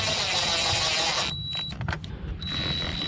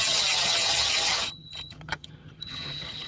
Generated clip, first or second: second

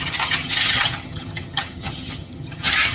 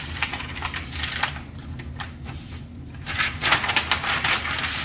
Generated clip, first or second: first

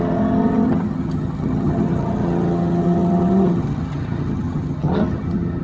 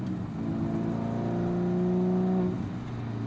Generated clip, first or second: first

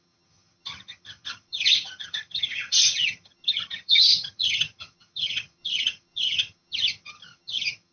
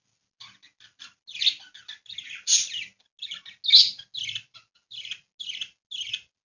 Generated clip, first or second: first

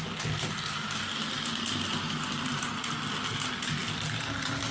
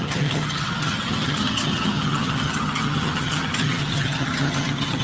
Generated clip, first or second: second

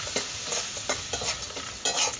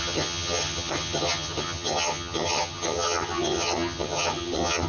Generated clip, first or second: second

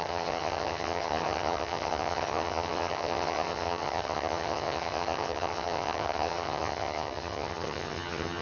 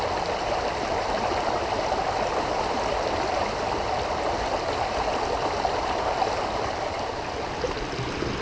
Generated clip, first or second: first